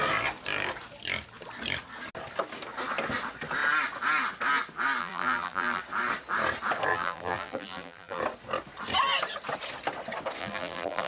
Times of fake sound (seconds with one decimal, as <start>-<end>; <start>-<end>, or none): 5.0-5.8; 6.9-8.2; 10.4-11.1